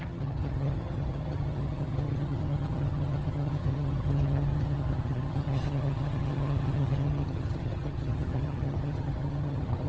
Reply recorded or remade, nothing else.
remade